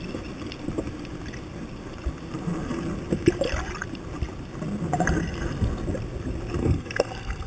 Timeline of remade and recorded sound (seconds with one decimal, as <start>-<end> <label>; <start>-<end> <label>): 0.0-6.6 recorded; 6.6-7.5 remade